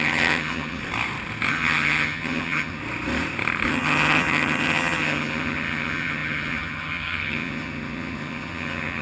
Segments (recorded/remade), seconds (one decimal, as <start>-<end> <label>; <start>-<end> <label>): 0.0-0.8 remade; 0.8-1.5 recorded; 1.5-2.8 remade; 2.8-3.7 recorded; 3.7-9.0 remade